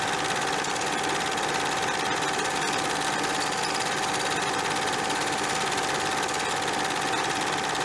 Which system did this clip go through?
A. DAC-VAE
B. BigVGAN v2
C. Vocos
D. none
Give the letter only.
D